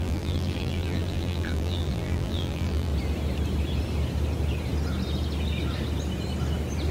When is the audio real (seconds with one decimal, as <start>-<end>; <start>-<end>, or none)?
2.9-6.9